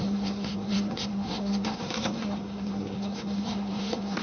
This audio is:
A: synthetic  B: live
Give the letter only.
A